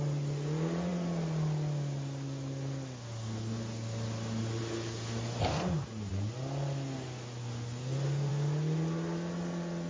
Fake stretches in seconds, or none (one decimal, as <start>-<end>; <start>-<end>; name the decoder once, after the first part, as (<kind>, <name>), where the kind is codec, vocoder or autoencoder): none